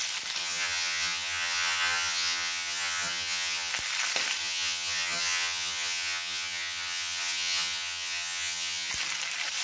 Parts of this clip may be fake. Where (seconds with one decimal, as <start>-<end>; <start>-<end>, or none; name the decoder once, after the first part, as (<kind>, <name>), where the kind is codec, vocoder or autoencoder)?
0.4-3.7 (vocoder, HiFi-GAN); 4.4-8.9